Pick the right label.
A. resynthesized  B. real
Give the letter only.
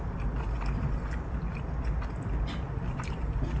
B